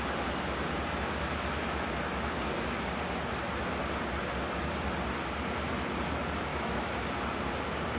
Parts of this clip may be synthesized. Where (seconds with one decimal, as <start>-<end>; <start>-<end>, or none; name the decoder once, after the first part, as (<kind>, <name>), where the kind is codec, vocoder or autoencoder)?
6.5-7.1 (autoencoder, DAC-VAE)